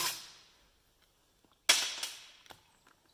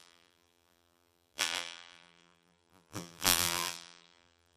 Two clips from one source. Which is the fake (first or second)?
second